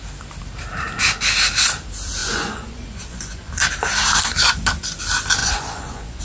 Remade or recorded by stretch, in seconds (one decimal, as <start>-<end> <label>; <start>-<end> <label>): 0.0-2.2 recorded; 2.2-3.5 remade; 3.5-5.4 recorded; 5.4-6.2 remade